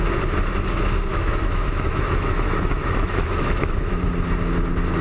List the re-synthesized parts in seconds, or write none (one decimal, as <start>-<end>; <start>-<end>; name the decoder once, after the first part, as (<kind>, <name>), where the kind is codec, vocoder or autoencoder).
1.1-4.1 (autoencoder, DAC-VAE)